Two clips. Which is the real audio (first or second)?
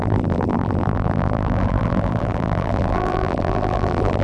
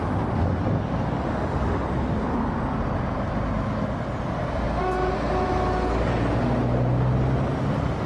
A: second